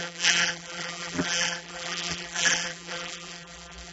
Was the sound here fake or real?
fake